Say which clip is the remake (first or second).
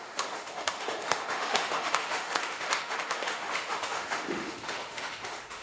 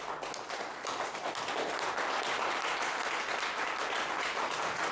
first